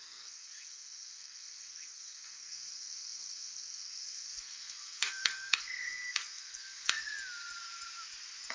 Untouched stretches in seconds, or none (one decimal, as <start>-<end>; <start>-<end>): 7.1-8.5